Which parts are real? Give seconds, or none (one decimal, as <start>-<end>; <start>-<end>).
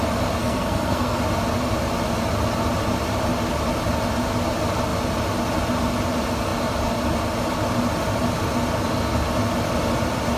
0.0-0.4; 1.2-10.4